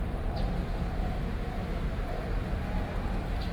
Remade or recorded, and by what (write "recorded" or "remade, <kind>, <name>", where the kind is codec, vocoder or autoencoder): recorded